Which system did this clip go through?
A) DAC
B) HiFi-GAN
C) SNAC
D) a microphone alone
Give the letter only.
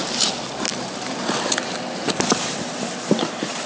D